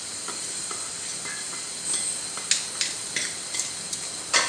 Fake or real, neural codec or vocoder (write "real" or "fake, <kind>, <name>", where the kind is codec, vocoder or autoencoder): real